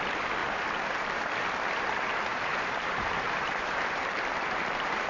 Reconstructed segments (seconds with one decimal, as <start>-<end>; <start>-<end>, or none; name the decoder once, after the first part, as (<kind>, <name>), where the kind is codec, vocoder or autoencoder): 0.4-1.5 (vocoder, BigVGAN v2); 2.3-5.1